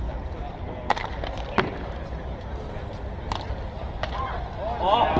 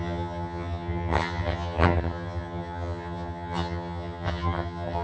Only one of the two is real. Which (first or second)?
first